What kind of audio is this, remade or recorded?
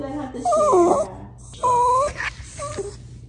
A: recorded